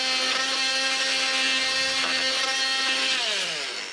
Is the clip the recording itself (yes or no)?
yes